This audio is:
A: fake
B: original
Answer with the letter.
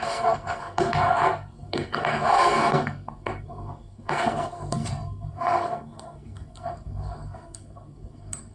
A